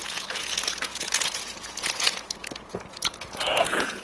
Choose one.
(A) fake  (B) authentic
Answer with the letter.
A